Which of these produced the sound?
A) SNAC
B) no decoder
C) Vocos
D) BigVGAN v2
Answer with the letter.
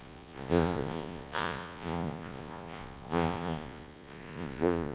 C